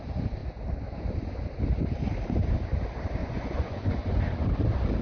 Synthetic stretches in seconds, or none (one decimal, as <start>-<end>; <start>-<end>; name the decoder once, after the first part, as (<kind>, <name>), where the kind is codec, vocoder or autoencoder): 3.2-4.2 (vocoder, Vocos)